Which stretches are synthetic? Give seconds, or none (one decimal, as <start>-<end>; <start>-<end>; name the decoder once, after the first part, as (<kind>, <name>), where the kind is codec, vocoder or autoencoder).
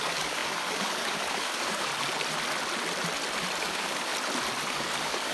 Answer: 0.0-1.9 (codec, DAC); 3.6-4.1; 4.7-5.3